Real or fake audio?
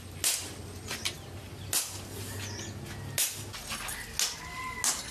real